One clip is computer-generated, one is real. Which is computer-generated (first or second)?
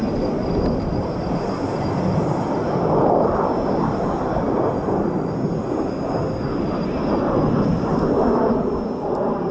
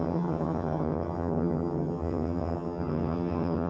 second